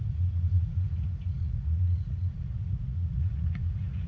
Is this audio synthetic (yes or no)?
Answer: yes